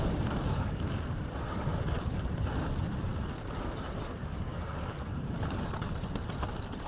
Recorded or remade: remade